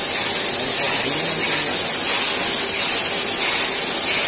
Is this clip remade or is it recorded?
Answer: recorded